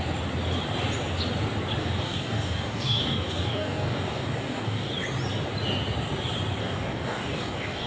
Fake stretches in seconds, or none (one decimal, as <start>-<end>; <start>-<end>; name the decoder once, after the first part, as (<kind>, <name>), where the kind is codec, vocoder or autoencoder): 1.8-4.9 (codec, DAC); 6.6-7.9